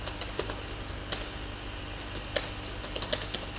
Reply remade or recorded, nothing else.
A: recorded